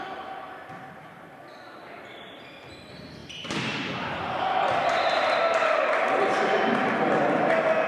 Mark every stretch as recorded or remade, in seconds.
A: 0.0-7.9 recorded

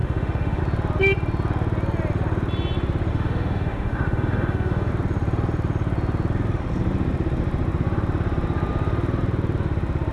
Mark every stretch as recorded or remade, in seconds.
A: 0.0-0.6 remade; 0.6-3.1 recorded; 3.1-4.9 remade; 4.9-10.1 recorded

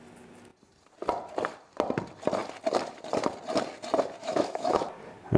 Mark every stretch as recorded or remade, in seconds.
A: 0.0-4.2 recorded; 4.2-4.8 remade; 4.8-5.4 recorded

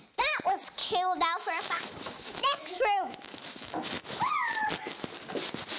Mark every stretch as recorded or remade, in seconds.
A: 0.0-0.8 recorded; 0.8-4.3 remade; 4.3-5.8 recorded

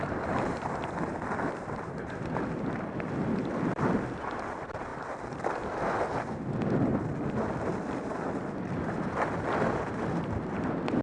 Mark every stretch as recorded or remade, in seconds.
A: 0.0-11.0 recorded

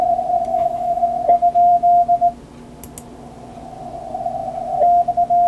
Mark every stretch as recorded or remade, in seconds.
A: 0.0-0.5 recorded; 0.5-1.0 remade; 1.0-5.5 recorded

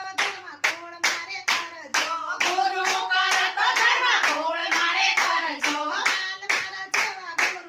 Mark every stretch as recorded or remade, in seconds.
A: 0.0-1.9 recorded; 1.9-3.0 remade; 3.0-4.6 recorded; 4.6-5.9 remade; 5.9-7.7 recorded